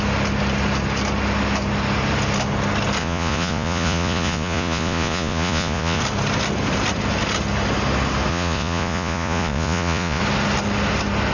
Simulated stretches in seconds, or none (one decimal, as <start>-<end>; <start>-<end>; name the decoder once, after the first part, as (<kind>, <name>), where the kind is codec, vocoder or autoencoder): 3.0-6.0 (vocoder, Vocos); 8.3-10.2